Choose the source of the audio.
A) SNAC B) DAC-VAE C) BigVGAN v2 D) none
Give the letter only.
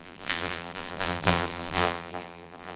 C